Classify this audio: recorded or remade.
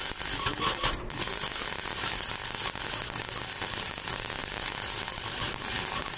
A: recorded